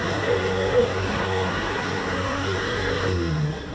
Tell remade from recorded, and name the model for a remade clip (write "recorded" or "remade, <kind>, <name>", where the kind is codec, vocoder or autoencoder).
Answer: remade, codec, SNAC